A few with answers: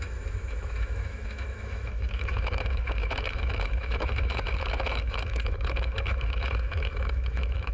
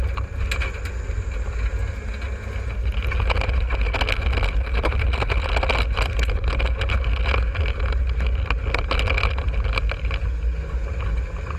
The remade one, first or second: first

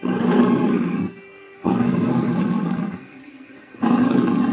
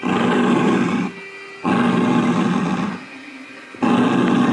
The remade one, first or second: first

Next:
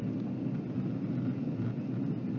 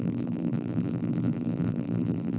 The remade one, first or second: second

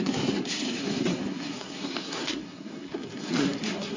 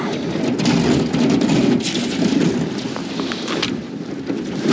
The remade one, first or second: first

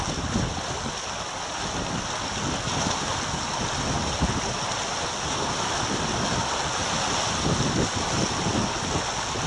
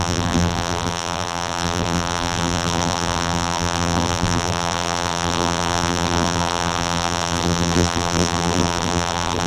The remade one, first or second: second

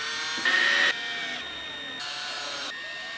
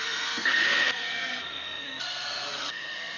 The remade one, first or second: second